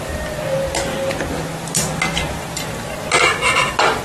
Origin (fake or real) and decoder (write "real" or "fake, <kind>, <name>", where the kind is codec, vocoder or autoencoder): real